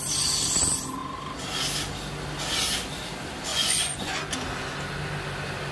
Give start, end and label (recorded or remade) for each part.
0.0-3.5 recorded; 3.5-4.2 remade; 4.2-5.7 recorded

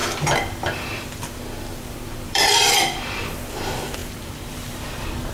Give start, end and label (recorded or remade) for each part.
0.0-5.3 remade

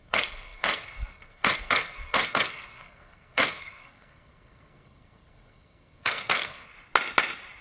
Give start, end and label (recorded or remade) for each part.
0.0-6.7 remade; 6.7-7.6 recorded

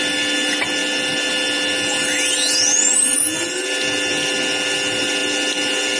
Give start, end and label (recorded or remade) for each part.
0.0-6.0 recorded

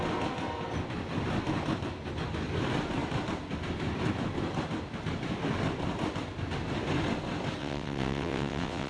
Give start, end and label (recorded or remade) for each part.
0.0-7.6 recorded; 7.6-8.9 remade

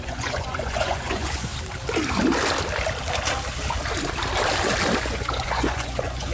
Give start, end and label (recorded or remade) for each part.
0.0-1.5 remade; 1.5-5.0 recorded; 5.0-6.3 remade